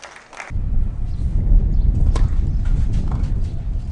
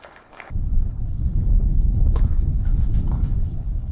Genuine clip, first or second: first